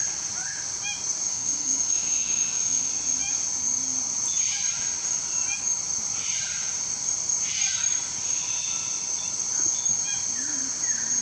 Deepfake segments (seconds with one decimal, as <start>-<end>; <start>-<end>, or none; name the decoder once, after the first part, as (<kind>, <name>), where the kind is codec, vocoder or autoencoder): 1.3-2.9 (autoencoder, DAC-VAE)